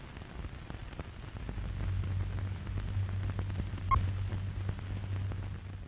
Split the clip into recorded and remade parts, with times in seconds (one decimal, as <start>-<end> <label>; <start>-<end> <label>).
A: 0.0-5.9 recorded